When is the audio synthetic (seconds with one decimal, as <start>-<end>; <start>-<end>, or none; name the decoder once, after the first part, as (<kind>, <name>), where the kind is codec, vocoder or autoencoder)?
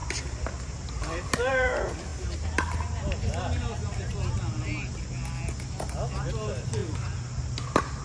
none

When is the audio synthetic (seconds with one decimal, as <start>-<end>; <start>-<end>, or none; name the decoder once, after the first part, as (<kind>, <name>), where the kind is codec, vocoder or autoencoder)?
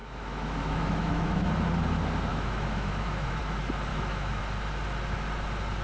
0.0-1.5 (autoencoder, DAC-VAE); 2.3-3.4; 3.9-4.4